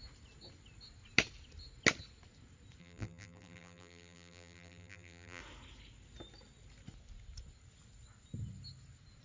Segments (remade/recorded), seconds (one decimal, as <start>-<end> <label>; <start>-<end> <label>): 0.0-2.8 recorded; 2.8-5.4 remade; 5.4-9.2 recorded